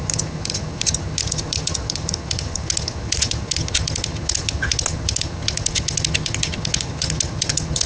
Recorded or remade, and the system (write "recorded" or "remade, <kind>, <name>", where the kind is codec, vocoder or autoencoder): remade, vocoder, HiFi-GAN